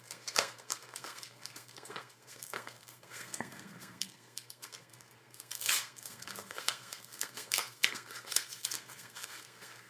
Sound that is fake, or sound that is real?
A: fake